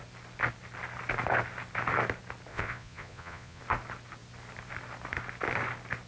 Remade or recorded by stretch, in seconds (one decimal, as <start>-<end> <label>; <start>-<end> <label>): 0.0-2.5 recorded; 2.5-3.6 remade; 3.6-6.1 recorded